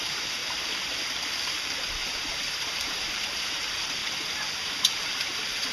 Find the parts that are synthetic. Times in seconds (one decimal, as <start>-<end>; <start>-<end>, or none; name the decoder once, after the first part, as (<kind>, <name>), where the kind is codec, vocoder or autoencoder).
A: 0.0-0.4 (vocoder, BigVGAN v2); 2.0-4.0; 5.1-5.7